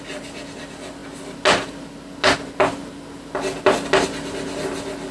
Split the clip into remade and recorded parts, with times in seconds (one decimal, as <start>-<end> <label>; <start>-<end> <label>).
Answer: 0.0-5.1 recorded